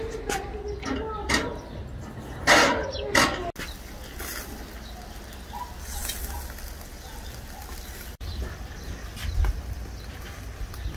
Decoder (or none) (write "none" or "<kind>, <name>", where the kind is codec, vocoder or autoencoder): none